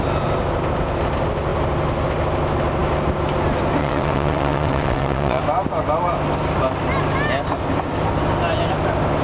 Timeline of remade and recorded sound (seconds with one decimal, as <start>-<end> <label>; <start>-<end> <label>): 0.0-3.8 recorded; 3.8-5.4 remade; 5.4-9.2 recorded